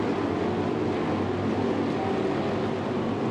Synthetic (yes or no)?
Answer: no